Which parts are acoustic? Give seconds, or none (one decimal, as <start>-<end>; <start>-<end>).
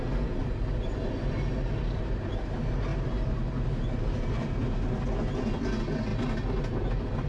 0.0-7.3